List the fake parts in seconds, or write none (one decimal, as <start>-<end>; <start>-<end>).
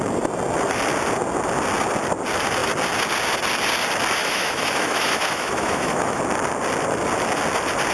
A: 4.2-6.2